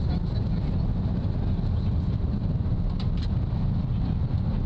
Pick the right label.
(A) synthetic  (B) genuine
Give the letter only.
B